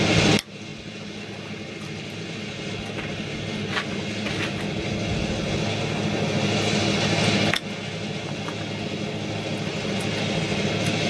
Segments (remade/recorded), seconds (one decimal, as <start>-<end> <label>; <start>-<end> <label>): 0.0-11.1 recorded